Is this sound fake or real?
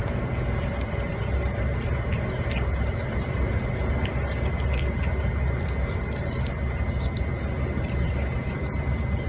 real